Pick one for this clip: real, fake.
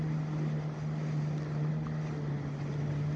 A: real